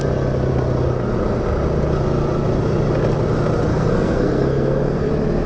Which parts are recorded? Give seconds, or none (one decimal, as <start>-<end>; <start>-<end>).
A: 0.0-3.7; 5.1-5.5